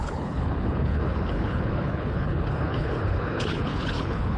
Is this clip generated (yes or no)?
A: yes